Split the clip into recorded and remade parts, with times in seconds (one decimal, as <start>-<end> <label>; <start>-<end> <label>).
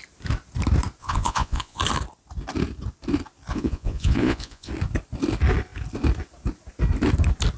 0.0-1.0 recorded; 1.0-1.8 remade; 1.8-3.5 recorded; 3.5-4.7 remade; 4.7-7.6 recorded